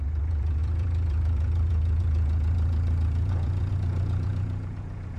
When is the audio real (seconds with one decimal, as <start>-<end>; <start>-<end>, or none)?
none